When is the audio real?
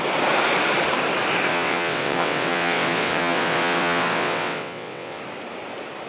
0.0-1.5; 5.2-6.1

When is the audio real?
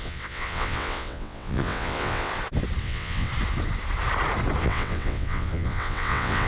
2.3-2.8; 3.3-4.6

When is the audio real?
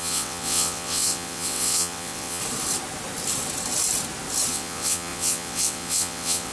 2.4-4.5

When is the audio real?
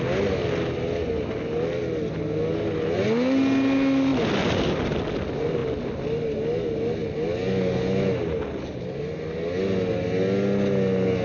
0.0-11.2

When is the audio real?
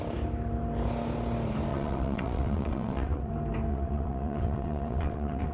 0.0-1.7; 3.3-3.7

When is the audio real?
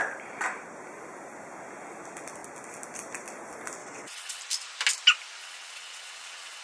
0.0-3.8; 4.4-5.4